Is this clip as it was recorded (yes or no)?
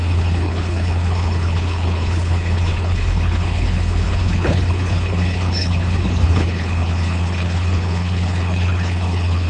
no